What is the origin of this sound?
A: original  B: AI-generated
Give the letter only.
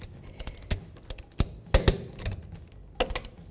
A